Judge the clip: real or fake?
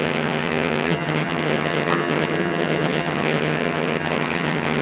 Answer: fake